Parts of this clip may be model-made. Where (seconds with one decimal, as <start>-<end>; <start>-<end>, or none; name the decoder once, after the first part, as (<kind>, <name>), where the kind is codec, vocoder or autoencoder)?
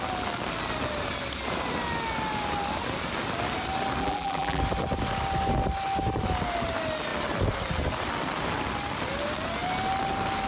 4.0-4.6 (vocoder, BigVGAN v2)